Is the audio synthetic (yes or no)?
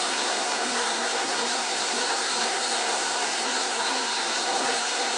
yes